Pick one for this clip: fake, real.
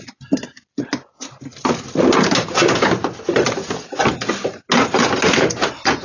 real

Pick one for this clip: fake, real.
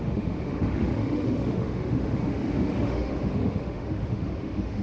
fake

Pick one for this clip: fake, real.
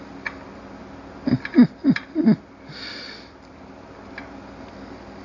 real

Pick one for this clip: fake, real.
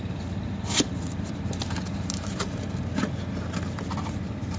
real